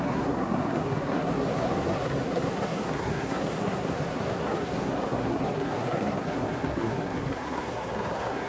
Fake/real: fake